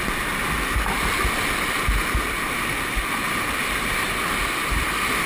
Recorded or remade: recorded